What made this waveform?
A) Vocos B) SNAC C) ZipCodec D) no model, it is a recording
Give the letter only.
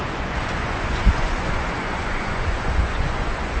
A